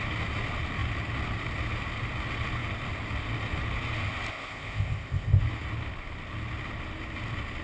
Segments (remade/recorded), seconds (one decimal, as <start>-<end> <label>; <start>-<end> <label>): 0.0-4.3 recorded; 4.3-5.4 remade; 5.4-7.6 recorded